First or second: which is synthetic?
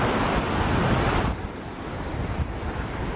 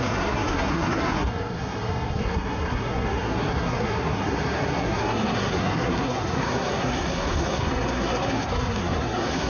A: second